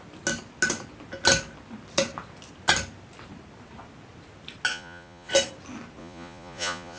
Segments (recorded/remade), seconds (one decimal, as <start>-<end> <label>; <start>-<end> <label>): 0.0-4.7 recorded; 4.7-5.3 remade; 5.3-6.0 recorded; 6.0-7.0 remade